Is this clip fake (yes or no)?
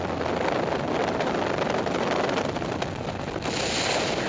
no